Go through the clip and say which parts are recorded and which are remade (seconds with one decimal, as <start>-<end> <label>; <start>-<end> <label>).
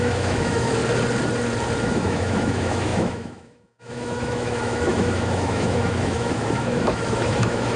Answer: 0.0-0.8 remade; 0.8-1.8 recorded; 1.8-7.8 remade